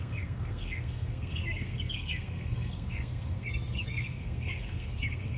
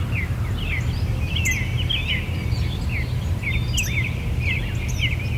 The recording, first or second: second